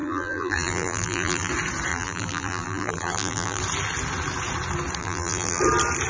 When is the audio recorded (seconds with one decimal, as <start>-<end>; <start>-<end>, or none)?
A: 1.5-1.9; 3.6-5.0; 5.6-6.1